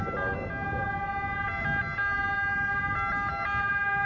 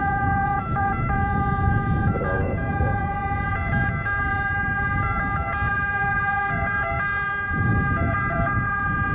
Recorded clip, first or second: first